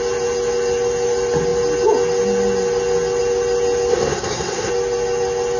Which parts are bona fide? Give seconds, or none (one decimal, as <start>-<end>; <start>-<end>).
0.0-3.9; 4.7-5.6